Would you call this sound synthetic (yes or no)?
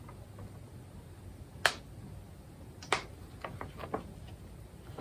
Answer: no